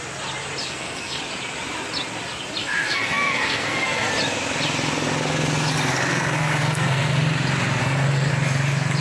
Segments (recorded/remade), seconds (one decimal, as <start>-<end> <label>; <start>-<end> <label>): 0.0-0.6 recorded; 0.6-1.2 remade; 1.2-2.6 recorded; 2.6-4.1 remade; 4.1-6.1 recorded; 6.1-7.1 remade; 7.1-7.8 recorded; 7.8-8.3 remade; 8.3-9.0 recorded